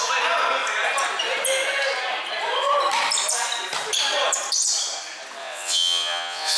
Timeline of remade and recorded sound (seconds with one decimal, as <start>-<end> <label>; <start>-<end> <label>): 0.0-5.4 recorded; 5.4-6.6 remade